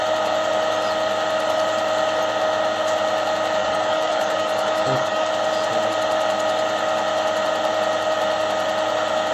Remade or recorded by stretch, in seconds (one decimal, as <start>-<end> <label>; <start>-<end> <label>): 0.0-3.6 recorded; 3.6-5.3 remade; 5.3-9.3 recorded